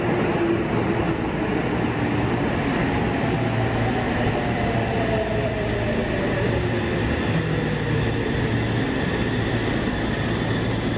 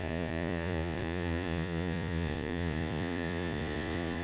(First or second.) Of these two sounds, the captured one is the first